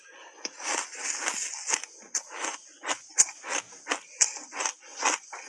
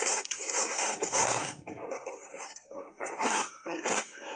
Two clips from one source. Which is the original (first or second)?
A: first